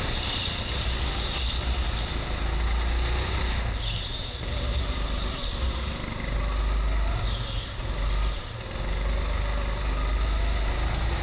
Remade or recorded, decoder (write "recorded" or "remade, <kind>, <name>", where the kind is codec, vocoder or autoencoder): recorded